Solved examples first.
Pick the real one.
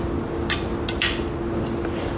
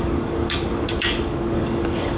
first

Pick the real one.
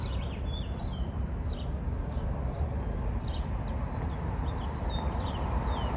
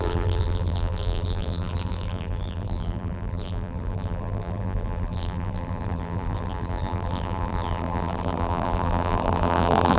first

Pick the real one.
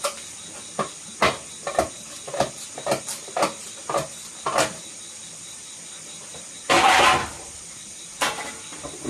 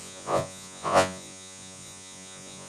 first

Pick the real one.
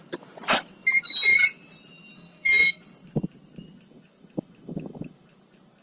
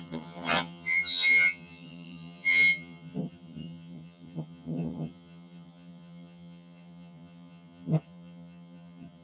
first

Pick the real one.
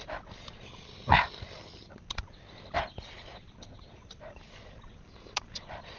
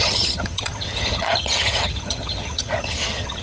first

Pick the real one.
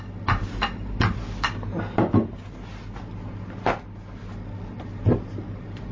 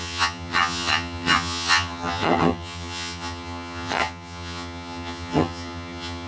first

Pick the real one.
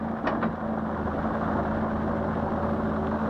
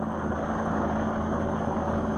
first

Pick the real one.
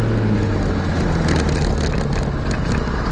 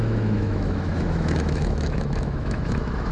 first